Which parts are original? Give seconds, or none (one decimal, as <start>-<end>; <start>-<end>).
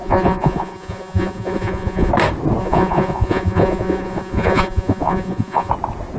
2.1-2.6; 5.7-6.2